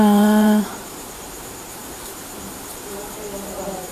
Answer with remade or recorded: remade